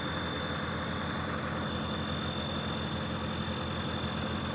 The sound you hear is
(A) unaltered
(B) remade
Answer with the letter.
A